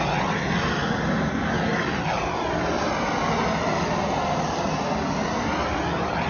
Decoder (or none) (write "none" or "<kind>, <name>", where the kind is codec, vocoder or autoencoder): none